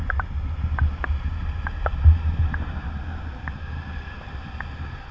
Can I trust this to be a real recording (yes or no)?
yes